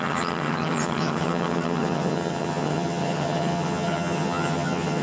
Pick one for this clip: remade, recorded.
remade